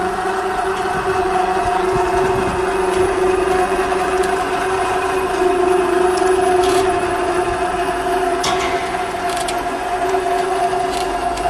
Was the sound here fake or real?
fake